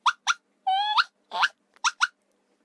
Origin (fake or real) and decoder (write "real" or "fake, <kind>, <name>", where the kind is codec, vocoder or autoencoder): real